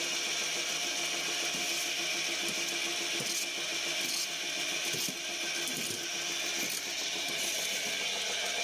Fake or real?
real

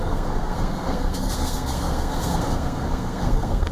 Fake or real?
fake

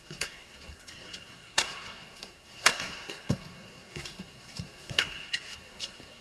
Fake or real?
fake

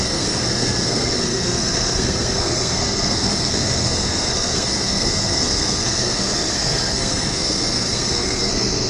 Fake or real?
fake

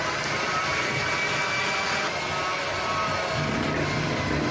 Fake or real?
real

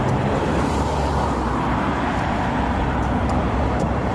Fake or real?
real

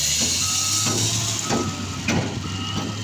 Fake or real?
real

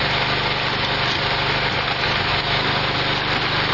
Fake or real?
real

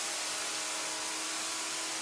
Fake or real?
real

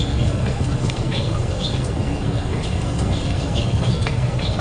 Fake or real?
fake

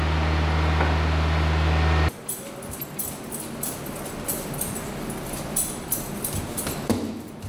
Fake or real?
real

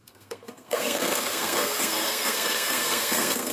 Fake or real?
fake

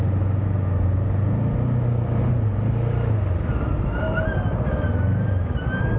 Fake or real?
real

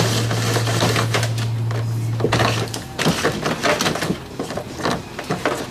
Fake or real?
real